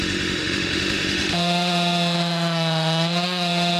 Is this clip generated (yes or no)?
yes